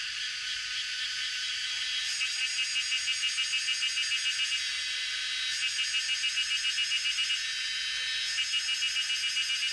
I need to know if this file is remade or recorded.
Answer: recorded